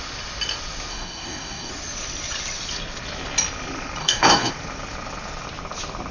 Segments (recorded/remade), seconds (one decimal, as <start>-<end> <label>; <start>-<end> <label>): 0.0-0.9 recorded; 0.9-1.7 remade; 1.7-4.0 recorded; 4.0-4.5 remade; 4.5-6.1 recorded